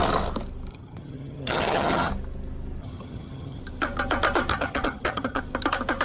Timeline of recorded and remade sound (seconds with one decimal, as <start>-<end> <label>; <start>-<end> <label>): 0.0-0.7 recorded; 0.7-2.1 remade; 2.1-2.8 recorded; 2.8-3.6 remade; 3.6-4.5 recorded; 4.5-5.4 remade; 5.4-6.0 recorded